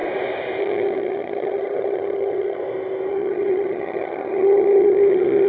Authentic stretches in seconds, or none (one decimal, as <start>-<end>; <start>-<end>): 0.0-0.6; 2.6-3.1